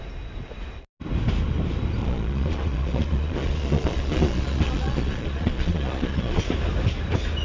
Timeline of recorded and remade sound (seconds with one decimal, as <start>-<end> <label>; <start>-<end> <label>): 0.0-2.0 recorded; 2.0-6.4 remade; 6.4-7.4 recorded